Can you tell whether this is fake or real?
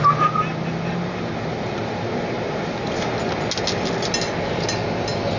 real